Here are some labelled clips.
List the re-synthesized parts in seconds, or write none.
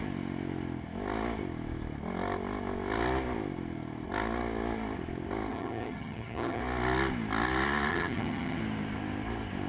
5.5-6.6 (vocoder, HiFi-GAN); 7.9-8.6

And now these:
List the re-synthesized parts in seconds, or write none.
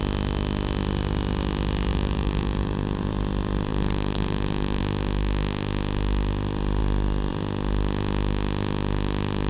1.9-3.1 (vocoder, BigVGAN v2); 3.7-4.8